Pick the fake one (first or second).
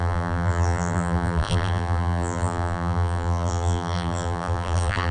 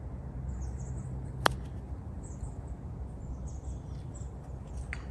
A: first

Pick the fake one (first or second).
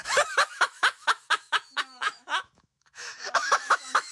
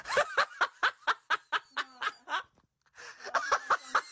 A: first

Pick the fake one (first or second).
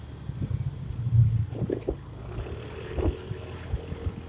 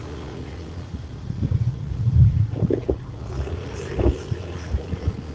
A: second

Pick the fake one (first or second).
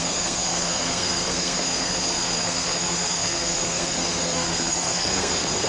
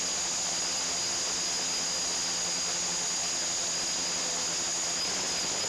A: first